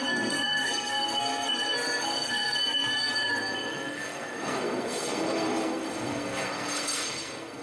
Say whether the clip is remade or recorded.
remade